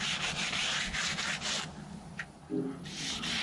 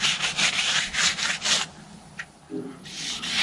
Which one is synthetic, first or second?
second